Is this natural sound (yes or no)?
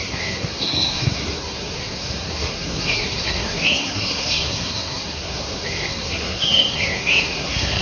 no